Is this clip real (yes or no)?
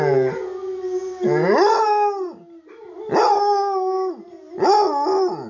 yes